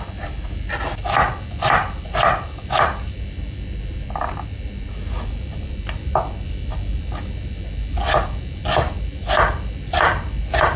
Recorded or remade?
recorded